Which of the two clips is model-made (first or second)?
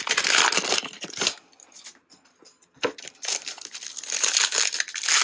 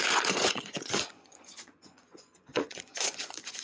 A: second